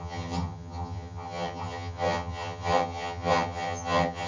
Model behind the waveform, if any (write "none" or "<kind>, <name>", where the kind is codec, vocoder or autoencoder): vocoder, HiFi-GAN